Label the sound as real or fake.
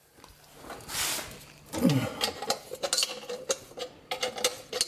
real